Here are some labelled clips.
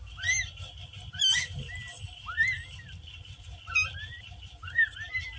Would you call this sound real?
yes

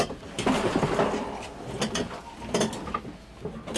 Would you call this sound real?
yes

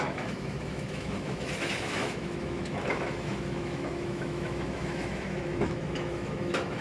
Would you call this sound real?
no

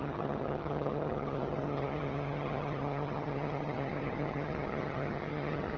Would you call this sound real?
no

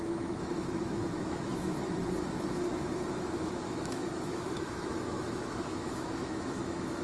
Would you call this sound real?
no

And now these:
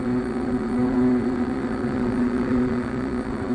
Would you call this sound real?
no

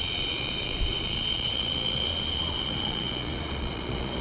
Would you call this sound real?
no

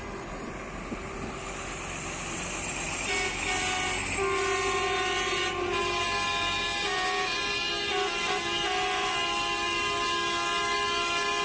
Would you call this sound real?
yes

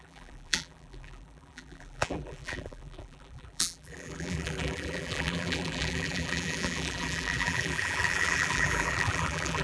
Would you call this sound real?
no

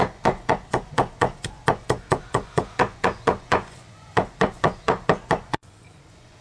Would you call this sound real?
no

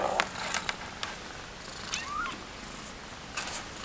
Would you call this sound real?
yes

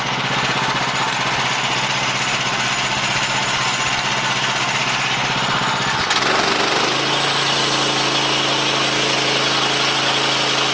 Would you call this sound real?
yes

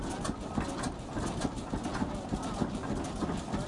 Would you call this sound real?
yes